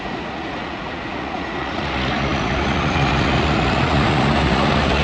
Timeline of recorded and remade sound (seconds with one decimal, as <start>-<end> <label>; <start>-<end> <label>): 0.0-5.0 remade